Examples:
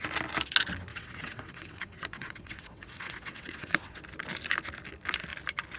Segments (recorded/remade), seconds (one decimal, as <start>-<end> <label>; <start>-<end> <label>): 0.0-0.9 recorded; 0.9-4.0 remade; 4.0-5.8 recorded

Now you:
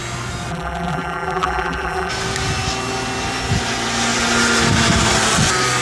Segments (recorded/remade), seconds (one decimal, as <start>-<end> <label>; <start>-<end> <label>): 0.0-0.5 recorded; 0.5-2.1 remade; 2.1-5.8 recorded

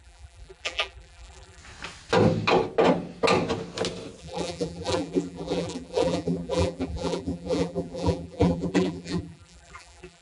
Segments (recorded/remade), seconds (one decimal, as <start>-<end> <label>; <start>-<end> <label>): 0.0-1.6 remade; 1.6-4.2 recorded; 4.2-10.2 remade

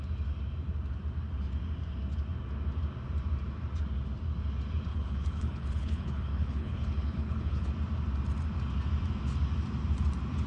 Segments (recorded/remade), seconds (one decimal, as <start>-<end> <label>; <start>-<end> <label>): 0.0-4.9 recorded; 4.9-7.7 remade; 7.7-10.5 recorded

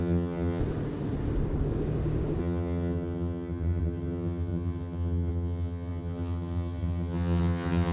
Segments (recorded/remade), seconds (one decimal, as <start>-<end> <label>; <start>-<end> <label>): 0.0-0.6 remade; 0.6-2.4 recorded; 2.4-7.9 remade